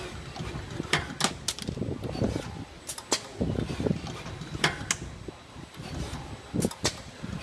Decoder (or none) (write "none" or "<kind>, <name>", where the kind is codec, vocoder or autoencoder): none